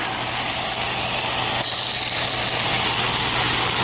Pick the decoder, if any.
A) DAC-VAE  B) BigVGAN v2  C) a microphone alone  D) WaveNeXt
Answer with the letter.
C